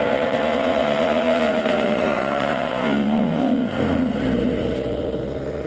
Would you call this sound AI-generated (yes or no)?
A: yes